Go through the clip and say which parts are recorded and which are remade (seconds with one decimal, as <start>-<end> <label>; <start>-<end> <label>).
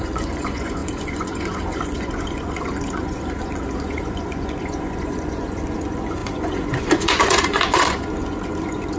0.0-9.0 remade